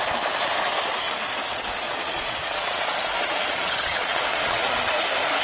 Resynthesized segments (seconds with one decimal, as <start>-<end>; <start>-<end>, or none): 1.5-4.7